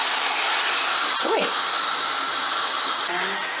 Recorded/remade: recorded